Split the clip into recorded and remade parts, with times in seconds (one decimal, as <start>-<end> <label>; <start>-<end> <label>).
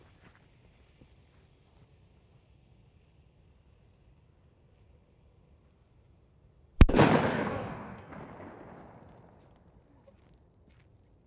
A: 0.0-7.3 recorded; 7.3-8.1 remade; 8.1-11.3 recorded